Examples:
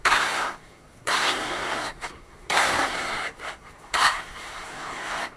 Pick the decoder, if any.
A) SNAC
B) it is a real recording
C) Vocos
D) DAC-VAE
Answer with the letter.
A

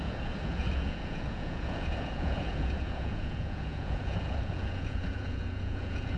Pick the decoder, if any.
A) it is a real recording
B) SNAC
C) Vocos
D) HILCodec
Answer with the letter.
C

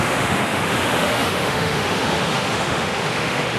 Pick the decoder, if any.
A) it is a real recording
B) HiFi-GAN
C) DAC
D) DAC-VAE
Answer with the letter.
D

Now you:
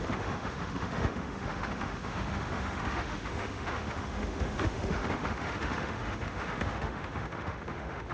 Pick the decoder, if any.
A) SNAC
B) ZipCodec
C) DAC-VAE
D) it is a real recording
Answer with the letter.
C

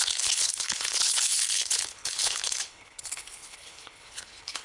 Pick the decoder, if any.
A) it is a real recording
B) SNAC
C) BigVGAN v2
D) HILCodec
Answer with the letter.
D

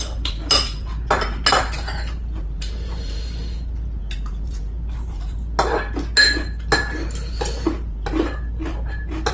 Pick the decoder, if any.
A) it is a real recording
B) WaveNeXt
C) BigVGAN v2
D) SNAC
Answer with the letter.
A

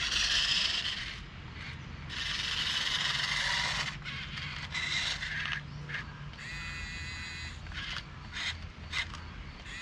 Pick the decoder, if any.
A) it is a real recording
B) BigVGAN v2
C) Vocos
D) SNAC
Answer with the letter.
A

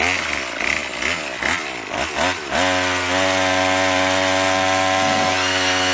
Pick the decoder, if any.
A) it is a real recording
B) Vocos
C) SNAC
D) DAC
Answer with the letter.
A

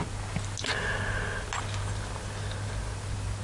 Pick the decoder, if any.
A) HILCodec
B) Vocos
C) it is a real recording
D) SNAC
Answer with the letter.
C